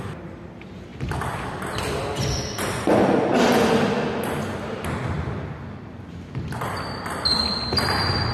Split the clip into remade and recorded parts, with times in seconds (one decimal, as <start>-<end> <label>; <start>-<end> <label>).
0.0-8.3 recorded